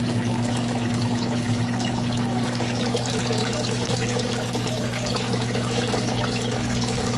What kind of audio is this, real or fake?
fake